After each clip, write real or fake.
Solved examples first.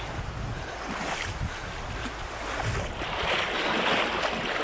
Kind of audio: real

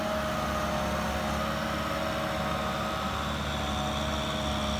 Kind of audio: real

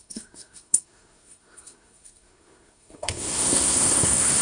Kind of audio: fake